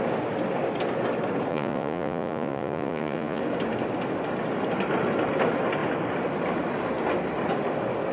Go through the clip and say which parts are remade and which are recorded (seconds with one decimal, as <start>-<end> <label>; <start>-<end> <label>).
0.0-1.5 recorded; 1.5-3.4 remade; 3.4-8.1 recorded